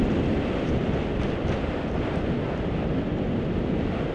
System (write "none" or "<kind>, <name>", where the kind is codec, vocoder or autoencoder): none